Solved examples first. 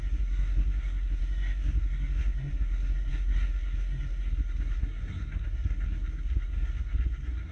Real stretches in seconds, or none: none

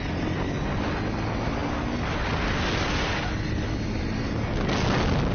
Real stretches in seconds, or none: 0.0-5.3

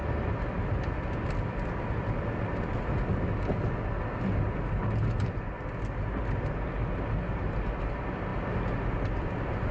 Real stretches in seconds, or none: 0.0-9.7

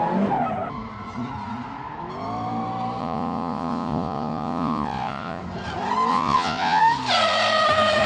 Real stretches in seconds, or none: 0.0-3.0; 5.4-6.1; 6.8-8.1

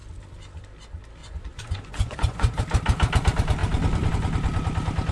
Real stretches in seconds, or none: 0.0-1.2; 2.6-5.1

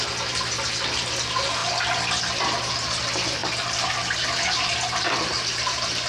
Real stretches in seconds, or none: none